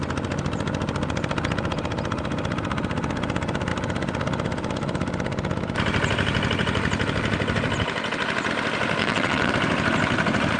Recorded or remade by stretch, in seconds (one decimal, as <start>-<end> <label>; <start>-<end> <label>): 0.0-9.0 recorded; 9.0-9.5 remade; 9.5-10.6 recorded